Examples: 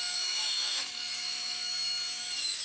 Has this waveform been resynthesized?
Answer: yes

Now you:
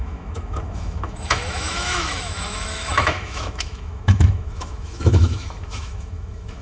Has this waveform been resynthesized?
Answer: yes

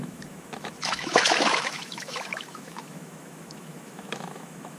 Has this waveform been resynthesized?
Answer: yes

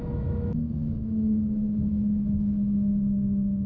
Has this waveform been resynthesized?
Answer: yes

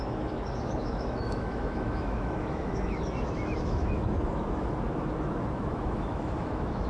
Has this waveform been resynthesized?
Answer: yes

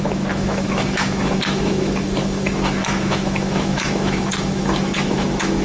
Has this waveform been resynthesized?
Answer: yes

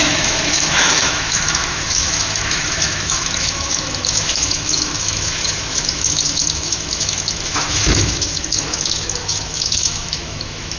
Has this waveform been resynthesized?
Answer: yes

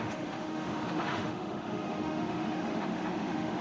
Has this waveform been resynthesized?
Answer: yes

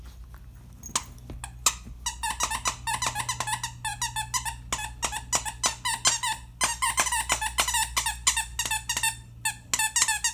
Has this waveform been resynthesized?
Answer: no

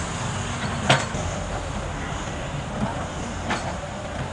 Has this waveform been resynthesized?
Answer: no